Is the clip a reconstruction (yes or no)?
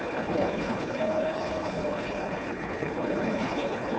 yes